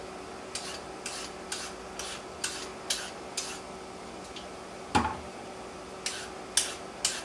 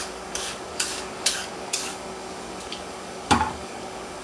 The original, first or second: first